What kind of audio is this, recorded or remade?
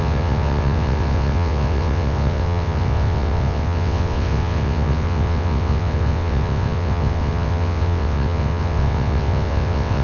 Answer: remade